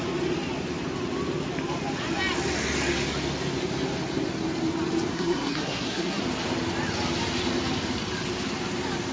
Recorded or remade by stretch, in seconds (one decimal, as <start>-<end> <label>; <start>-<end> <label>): 0.0-5.1 recorded; 5.1-6.2 remade; 6.2-9.1 recorded